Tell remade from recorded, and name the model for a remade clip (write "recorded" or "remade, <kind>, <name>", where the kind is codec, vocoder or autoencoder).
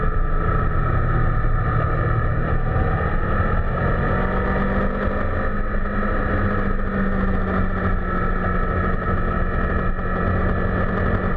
recorded